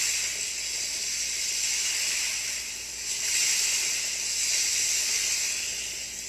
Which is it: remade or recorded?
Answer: recorded